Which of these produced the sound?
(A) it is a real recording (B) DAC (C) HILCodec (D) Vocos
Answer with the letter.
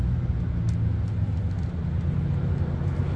A